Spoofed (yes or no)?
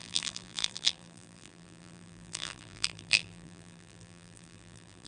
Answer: yes